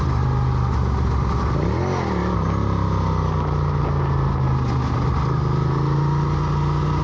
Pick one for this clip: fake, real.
real